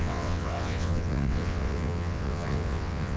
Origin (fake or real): fake